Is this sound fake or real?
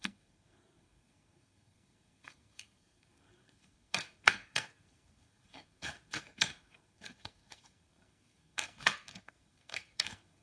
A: fake